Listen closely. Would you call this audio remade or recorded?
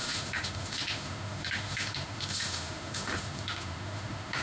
remade